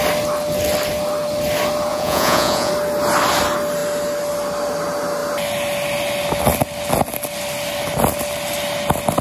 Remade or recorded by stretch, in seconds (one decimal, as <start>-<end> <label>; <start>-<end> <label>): 0.0-1.9 recorded; 1.9-2.7 remade; 2.7-9.2 recorded